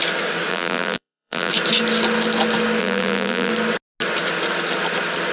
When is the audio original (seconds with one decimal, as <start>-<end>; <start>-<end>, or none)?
0.0-0.5; 1.5-2.8; 3.5-5.3